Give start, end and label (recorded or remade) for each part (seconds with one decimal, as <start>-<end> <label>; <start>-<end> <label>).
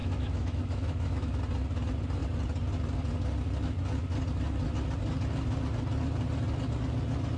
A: 0.0-1.4 remade; 1.4-7.4 recorded